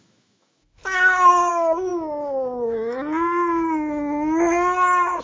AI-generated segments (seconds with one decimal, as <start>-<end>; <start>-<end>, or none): 0.0-0.8; 1.5-1.9